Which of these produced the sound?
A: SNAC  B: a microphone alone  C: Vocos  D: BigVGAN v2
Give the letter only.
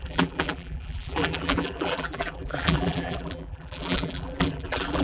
D